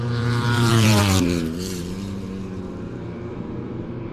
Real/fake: fake